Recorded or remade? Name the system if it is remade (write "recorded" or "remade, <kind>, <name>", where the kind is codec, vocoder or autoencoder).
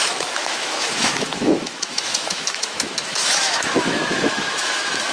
remade, autoencoder, DAC-VAE